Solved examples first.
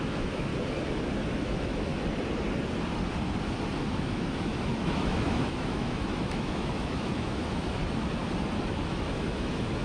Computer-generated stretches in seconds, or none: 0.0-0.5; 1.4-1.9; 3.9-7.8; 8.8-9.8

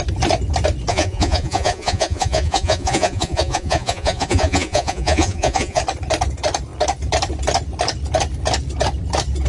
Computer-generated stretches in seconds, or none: 0.9-5.8

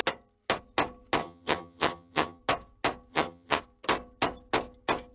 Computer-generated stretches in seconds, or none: 1.2-2.4; 3.1-3.6

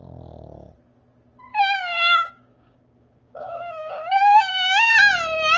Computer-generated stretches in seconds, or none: 1.5-4.9

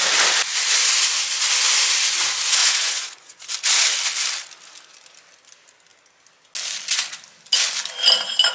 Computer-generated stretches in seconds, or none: 2.6-3.4